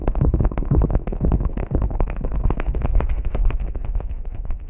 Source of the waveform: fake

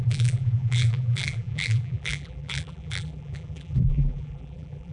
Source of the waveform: fake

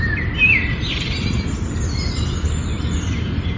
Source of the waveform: real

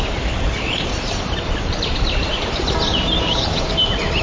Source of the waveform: fake